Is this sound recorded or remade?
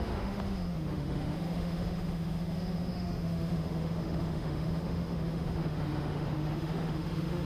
remade